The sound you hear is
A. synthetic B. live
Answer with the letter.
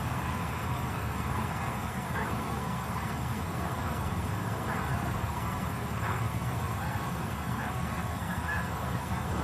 A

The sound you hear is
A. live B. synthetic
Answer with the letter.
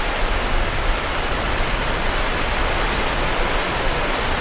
A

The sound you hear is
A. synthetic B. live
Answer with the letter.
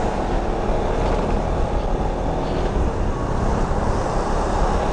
B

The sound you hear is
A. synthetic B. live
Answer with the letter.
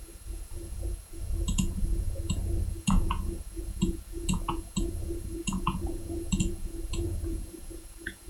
A